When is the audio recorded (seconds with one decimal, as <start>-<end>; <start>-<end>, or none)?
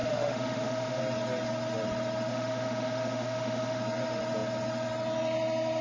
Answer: 1.0-2.3; 3.8-5.8